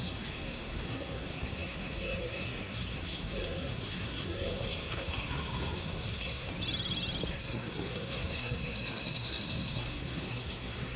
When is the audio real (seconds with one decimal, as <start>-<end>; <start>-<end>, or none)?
6.5-7.3

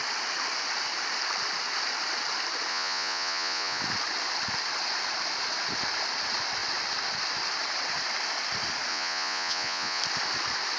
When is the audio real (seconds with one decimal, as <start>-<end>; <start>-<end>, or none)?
0.0-2.7; 3.8-8.9; 10.0-10.8

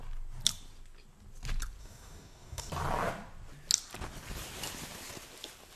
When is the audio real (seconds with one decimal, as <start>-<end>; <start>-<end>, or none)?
0.0-1.8; 2.7-5.8

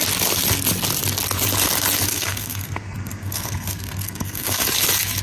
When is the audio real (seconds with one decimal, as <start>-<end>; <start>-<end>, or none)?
0.0-2.1; 4.6-5.2

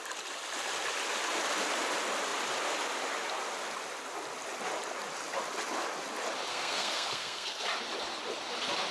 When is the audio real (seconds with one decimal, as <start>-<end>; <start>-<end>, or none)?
0.0-6.5; 7.6-8.9

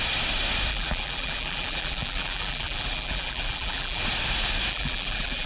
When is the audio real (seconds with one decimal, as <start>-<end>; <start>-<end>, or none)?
0.0-0.7; 4.0-4.7